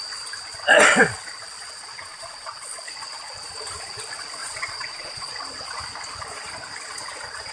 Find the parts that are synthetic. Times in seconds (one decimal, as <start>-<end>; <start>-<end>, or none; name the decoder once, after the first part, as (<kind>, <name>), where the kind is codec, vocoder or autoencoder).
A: 2.1-2.8 (vocoder, Vocos); 4.4-5.3

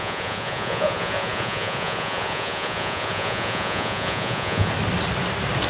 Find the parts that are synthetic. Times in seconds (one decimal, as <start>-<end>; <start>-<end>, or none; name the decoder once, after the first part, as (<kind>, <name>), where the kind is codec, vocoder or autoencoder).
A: 0.0-4.7 (vocoder, Vocos)

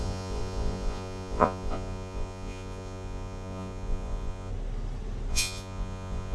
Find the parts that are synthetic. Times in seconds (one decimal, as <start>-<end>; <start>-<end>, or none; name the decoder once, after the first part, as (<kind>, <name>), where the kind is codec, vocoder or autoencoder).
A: 0.0-4.5 (vocoder, Vocos); 5.3-6.3

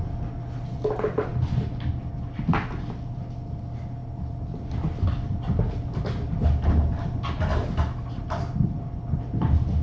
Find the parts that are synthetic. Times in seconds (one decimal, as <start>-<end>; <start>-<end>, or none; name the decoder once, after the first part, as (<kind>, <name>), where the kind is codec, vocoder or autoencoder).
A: none

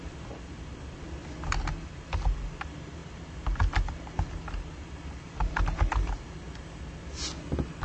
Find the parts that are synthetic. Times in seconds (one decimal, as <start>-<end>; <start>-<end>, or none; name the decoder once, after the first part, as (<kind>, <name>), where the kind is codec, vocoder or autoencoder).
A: none

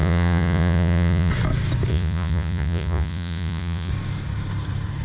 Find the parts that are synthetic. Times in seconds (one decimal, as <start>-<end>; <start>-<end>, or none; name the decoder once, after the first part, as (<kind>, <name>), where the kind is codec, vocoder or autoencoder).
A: 0.0-1.3 (vocoder, Vocos); 1.9-3.9